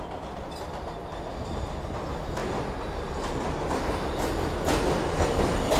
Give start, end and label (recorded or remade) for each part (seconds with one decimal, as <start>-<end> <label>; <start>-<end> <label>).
0.0-5.8 recorded